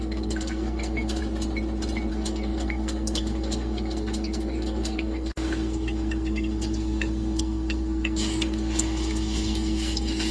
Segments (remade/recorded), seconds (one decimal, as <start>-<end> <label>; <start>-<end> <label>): 0.0-1.2 remade; 1.2-2.1 recorded; 2.1-10.3 remade